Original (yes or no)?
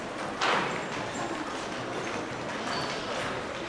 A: yes